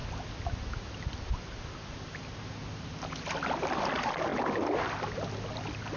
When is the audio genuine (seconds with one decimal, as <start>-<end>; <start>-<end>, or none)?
0.0-6.0